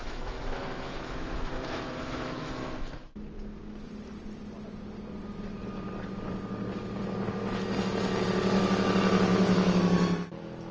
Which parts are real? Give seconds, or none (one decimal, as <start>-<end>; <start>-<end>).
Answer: 2.5-9.3; 9.8-10.7